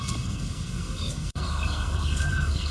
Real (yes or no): no